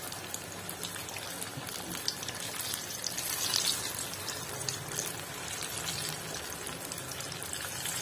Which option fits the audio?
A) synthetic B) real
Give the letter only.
B